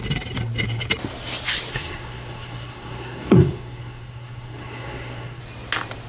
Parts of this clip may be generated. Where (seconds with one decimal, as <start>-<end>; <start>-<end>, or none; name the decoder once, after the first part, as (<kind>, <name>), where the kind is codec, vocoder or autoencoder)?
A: 1.7-5.4 (codec, SNAC)